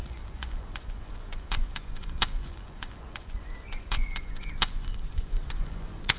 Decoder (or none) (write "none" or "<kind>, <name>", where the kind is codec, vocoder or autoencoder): vocoder, Vocos